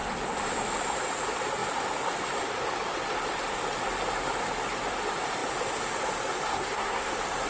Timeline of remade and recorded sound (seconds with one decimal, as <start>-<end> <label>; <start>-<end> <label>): 0.0-6.5 recorded; 6.5-7.1 remade; 7.1-7.5 recorded